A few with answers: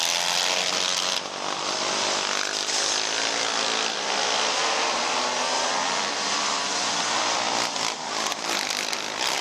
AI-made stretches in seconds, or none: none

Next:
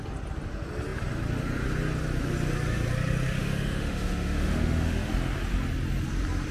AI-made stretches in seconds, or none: 3.4-5.1